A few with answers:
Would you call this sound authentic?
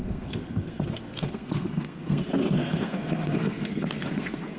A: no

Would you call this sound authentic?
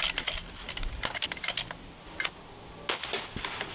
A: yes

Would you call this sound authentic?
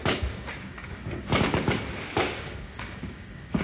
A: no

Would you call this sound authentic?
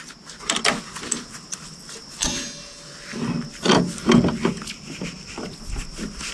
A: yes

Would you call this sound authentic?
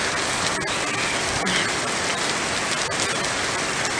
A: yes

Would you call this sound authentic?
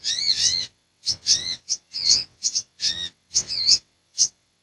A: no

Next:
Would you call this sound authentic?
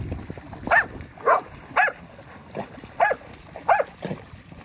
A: yes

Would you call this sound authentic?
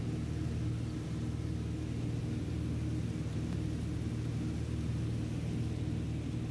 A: yes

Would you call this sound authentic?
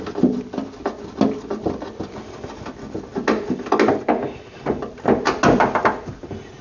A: yes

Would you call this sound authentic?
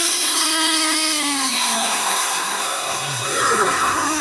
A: no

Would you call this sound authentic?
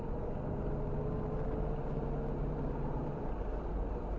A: yes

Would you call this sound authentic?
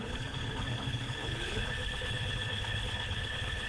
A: no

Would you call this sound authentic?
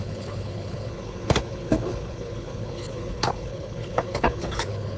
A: no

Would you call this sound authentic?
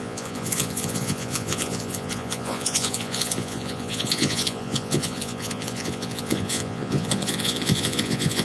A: no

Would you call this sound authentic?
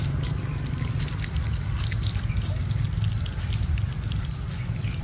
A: yes